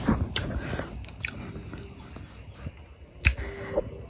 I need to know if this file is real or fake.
real